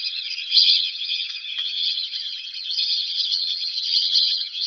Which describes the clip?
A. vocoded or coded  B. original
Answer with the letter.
A